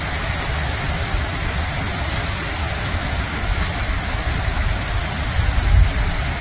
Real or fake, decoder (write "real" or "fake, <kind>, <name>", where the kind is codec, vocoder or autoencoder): real